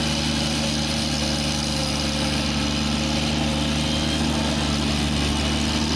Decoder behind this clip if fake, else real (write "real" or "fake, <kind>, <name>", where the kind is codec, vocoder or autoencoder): real